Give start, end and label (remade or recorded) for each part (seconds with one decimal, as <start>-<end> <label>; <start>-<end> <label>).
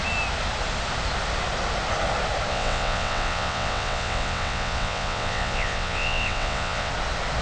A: 0.0-2.5 recorded; 2.5-6.9 remade; 6.9-7.4 recorded